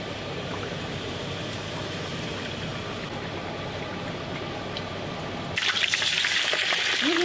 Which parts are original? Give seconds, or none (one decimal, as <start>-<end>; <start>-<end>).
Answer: 2.7-5.7